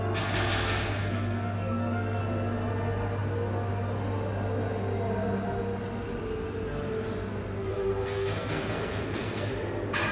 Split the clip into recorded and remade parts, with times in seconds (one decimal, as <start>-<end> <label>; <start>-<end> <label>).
0.0-1.0 recorded; 1.0-2.2 remade; 2.2-7.7 recorded; 7.7-9.5 remade; 9.5-10.1 recorded